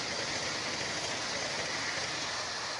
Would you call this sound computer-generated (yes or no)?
no